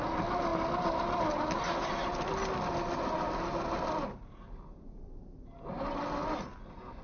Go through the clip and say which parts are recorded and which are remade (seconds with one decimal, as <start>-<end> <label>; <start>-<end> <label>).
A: 0.0-7.0 recorded